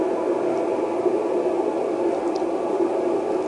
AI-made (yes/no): no